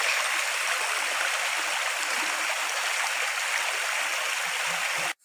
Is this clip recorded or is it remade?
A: recorded